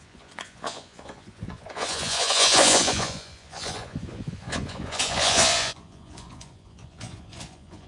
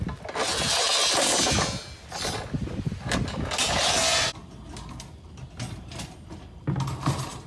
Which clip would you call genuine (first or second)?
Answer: second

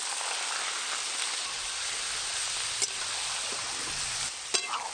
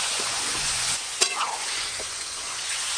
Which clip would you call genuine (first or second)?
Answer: first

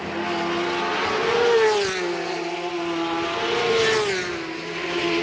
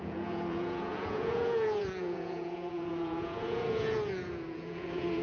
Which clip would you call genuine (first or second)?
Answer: first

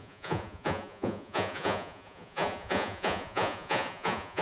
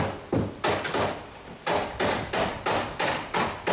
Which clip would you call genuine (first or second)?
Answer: second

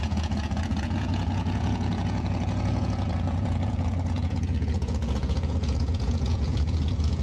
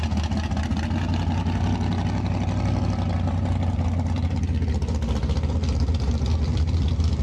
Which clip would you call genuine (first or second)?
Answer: second